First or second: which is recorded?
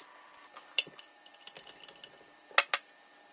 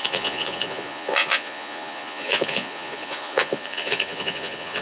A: first